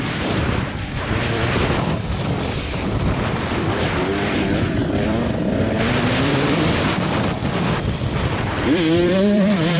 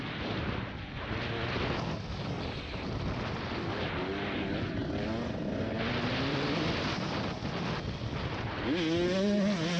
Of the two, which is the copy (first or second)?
first